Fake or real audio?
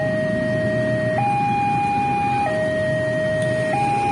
real